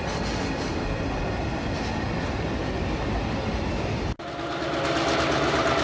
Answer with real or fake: real